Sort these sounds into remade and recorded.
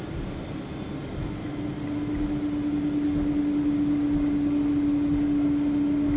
recorded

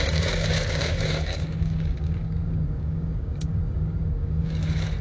remade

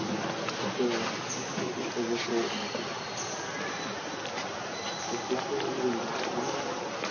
recorded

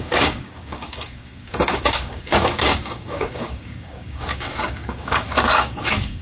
remade